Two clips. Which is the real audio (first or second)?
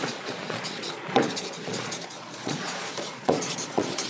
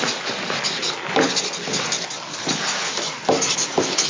second